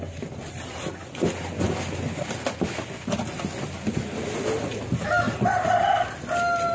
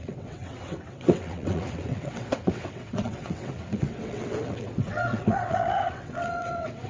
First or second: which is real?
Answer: first